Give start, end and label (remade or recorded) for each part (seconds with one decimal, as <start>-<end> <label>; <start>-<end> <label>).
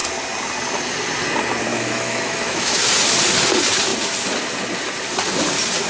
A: 0.0-1.7 recorded; 1.7-2.8 remade; 2.8-5.9 recorded